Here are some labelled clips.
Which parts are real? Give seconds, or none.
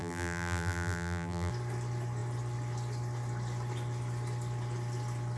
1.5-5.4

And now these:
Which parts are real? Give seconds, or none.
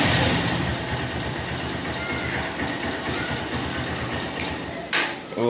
0.7-4.0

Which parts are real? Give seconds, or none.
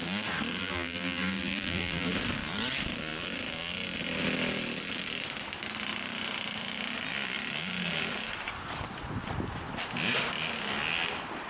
0.0-0.6; 2.1-11.5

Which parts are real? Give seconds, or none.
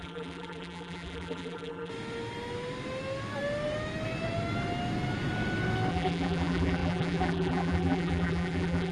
1.9-5.9